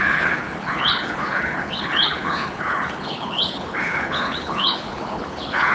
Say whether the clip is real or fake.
fake